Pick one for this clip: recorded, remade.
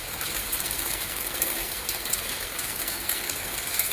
remade